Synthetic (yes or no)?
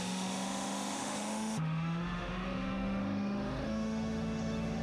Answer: yes